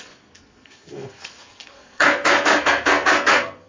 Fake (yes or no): yes